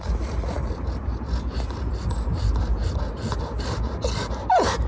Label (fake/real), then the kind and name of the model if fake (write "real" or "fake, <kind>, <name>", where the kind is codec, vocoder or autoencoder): real